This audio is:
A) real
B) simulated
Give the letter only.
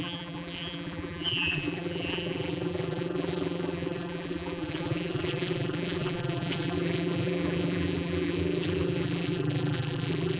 B